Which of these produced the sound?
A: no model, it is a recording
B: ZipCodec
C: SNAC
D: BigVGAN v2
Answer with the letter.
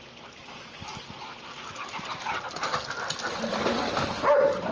D